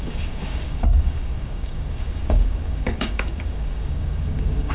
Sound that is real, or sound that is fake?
fake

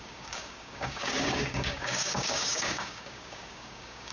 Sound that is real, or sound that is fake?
fake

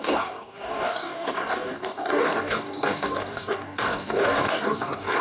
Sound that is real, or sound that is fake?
fake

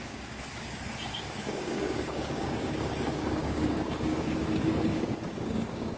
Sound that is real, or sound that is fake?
fake